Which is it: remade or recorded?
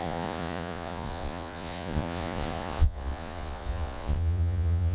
remade